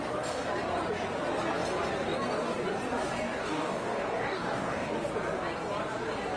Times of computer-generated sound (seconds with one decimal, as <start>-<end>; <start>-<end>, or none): 3.4-4.9